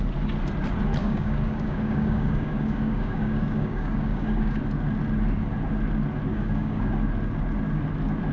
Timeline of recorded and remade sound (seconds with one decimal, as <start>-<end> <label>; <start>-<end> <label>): 0.0-1.0 recorded; 1.0-4.6 remade; 4.6-6.3 recorded; 6.3-6.9 remade; 6.9-8.3 recorded